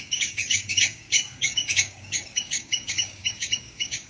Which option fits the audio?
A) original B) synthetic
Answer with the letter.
B